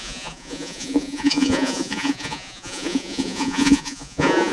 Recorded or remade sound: remade